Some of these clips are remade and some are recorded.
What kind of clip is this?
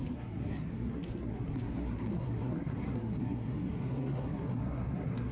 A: remade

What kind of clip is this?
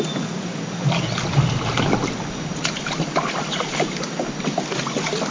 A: recorded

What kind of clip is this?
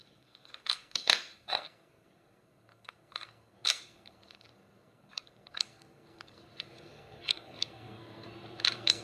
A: remade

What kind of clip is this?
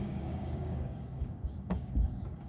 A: remade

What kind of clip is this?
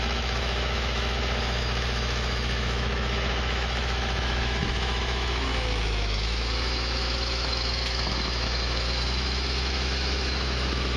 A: remade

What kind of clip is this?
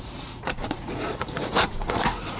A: remade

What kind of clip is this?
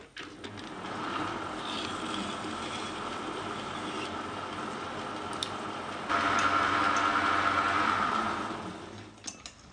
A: recorded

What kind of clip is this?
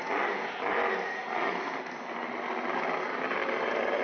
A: recorded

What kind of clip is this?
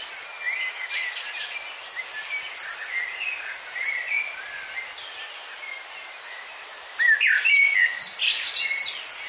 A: recorded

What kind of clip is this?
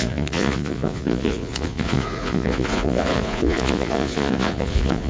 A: remade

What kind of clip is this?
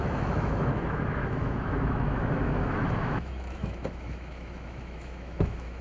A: remade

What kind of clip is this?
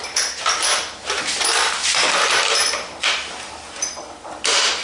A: recorded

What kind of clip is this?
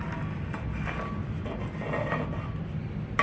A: recorded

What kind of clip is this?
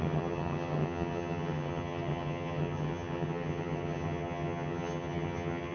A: remade